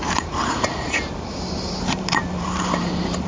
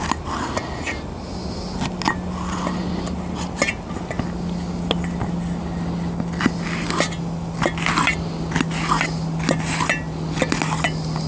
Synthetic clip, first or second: first